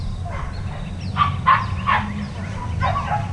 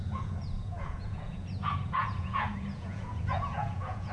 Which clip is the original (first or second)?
first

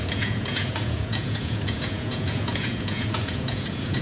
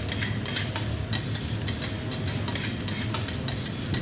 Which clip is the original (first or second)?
second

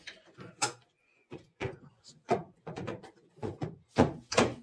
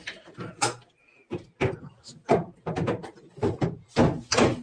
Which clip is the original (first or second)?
second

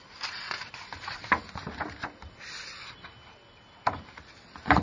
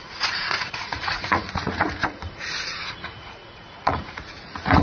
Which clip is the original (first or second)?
first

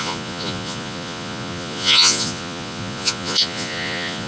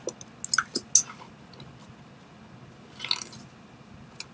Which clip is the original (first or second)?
second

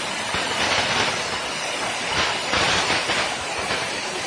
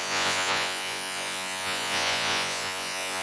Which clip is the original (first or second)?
first